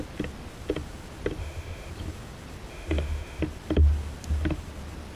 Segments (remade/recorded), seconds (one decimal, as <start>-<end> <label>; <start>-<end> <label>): 0.0-1.4 recorded; 1.4-1.9 remade; 1.9-2.7 recorded; 2.7-3.4 remade; 3.4-5.2 recorded